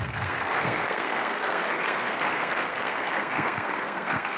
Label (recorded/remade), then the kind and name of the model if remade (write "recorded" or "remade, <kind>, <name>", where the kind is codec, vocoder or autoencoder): remade, codec, SNAC